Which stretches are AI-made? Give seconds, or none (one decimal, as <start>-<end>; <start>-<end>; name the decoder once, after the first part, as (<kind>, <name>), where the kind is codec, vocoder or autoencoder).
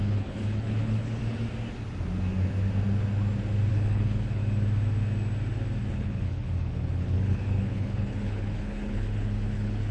0.0-1.2 (codec, HILCodec); 3.7-4.4; 5.9-9.9